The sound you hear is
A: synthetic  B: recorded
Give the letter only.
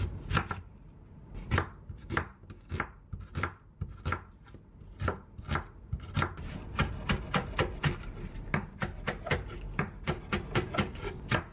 B